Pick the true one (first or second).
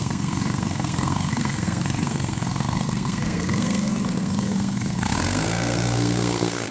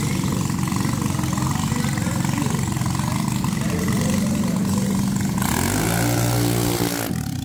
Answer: second